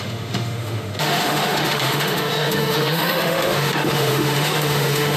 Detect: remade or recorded remade